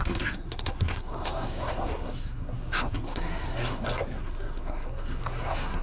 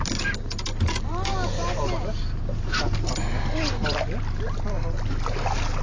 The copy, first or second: first